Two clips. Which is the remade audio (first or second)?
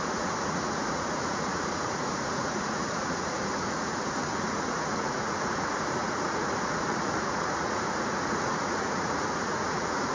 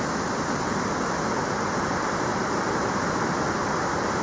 first